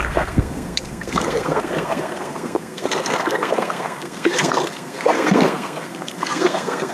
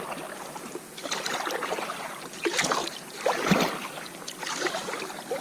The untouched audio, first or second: second